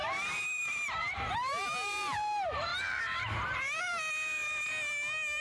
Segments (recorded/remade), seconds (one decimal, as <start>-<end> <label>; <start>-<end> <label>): 0.0-4.4 remade; 4.4-5.4 recorded